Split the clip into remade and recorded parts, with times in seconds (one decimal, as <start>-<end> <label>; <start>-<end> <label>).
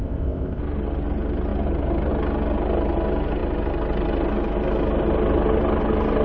0.0-0.6 remade; 0.6-6.2 recorded